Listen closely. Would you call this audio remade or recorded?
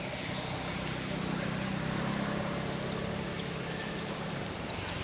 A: recorded